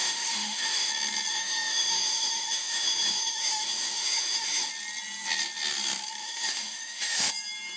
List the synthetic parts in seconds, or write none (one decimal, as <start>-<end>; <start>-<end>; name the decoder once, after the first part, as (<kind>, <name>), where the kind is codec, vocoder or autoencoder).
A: 0.0-0.9 (autoencoder, DAC-VAE); 1.3-4.7; 6.2-7.3